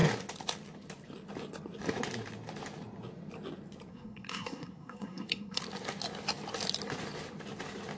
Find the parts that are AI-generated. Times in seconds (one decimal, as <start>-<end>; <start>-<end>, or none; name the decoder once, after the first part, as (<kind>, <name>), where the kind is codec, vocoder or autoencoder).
3.9-5.6 (codec, SNAC)